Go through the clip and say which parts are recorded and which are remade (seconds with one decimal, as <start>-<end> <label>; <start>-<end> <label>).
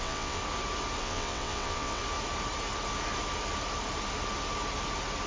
0.0-0.4 remade; 0.4-1.0 recorded; 1.0-2.0 remade; 2.0-5.3 recorded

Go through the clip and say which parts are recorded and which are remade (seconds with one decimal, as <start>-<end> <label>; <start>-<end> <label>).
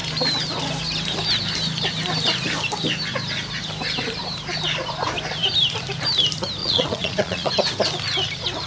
0.0-6.6 recorded; 6.6-7.5 remade; 7.5-8.7 recorded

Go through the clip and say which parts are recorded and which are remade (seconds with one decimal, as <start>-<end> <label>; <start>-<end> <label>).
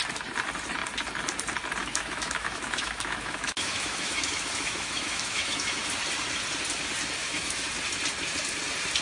0.0-1.8 recorded; 1.8-5.8 remade; 5.8-7.2 recorded; 7.2-7.7 remade; 7.7-9.0 recorded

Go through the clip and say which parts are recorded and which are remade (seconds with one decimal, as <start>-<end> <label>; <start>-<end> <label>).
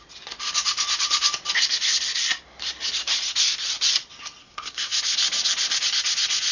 0.0-4.4 recorded; 4.4-5.0 remade; 5.0-6.5 recorded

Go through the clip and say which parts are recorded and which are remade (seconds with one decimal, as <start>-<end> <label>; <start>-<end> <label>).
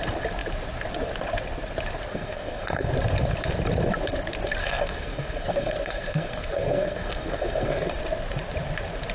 0.0-2.1 recorded; 2.1-2.9 remade; 2.9-4.6 recorded; 4.6-8.0 remade; 8.0-9.1 recorded